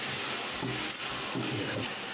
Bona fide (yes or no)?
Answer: yes